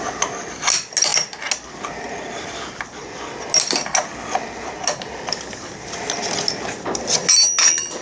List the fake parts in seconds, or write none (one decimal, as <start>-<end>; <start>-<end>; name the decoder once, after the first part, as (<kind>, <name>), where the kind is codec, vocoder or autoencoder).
none